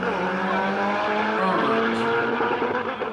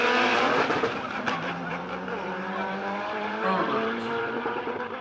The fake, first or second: second